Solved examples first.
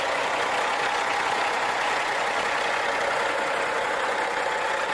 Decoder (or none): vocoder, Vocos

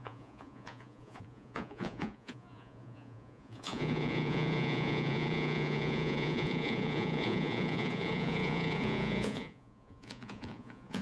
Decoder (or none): vocoder, Vocos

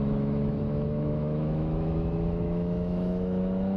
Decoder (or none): autoencoder, DAC-VAE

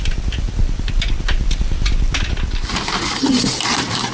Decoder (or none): none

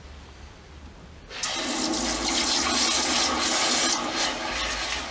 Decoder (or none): none